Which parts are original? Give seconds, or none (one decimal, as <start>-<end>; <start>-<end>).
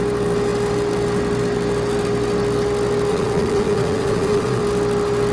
0.0-3.1; 4.6-5.3